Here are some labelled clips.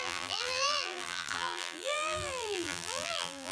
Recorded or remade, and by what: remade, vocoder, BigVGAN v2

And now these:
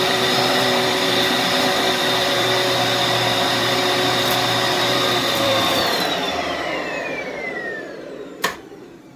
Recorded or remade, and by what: remade, vocoder, BigVGAN v2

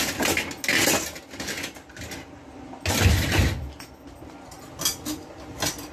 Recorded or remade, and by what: recorded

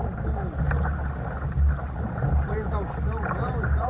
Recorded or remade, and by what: recorded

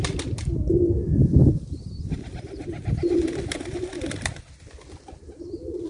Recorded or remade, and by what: remade, vocoder, BigVGAN v2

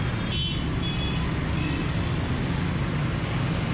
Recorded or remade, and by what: recorded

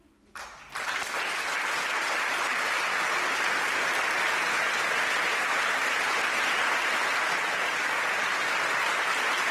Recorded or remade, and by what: recorded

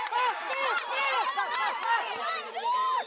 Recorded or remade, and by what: remade, vocoder, BigVGAN v2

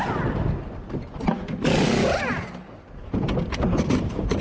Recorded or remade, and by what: remade, vocoder, BigVGAN v2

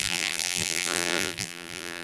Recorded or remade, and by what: remade, vocoder, BigVGAN v2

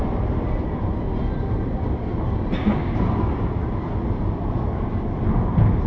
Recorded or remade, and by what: recorded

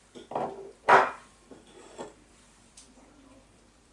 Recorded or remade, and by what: remade, vocoder, BigVGAN v2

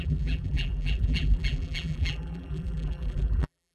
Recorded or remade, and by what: remade, vocoder, BigVGAN v2